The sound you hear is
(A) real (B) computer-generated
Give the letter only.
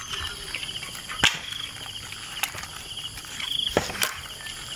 A